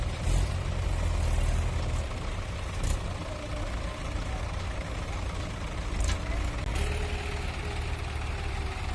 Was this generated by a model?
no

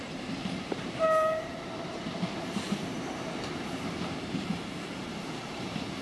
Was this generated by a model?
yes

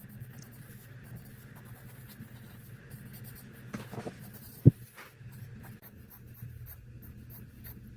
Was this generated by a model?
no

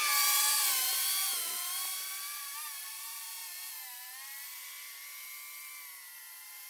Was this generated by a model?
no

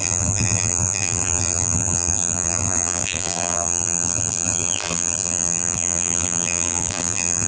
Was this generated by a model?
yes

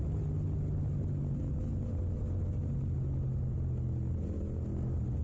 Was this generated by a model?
no